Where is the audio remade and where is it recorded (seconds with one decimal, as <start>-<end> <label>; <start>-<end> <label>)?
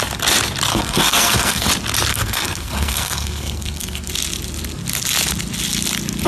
0.0-0.7 recorded; 0.7-1.7 remade; 1.7-2.1 recorded; 2.1-4.1 remade; 4.1-6.3 recorded